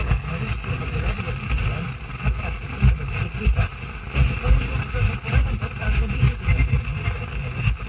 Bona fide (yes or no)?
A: yes